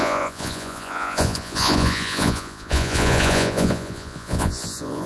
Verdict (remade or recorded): remade